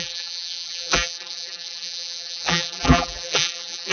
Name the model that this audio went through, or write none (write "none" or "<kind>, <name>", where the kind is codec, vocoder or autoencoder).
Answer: vocoder, BigVGAN v2